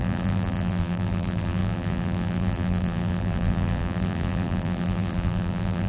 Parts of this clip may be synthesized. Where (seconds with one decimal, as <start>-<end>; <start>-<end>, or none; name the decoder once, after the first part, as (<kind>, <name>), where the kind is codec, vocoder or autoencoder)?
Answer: 0.0-5.9 (vocoder, BigVGAN v2)